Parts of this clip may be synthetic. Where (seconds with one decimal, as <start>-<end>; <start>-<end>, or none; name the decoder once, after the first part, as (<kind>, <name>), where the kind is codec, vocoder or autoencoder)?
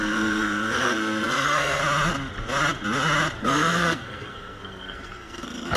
0.0-1.8 (codec, SNAC); 3.4-5.8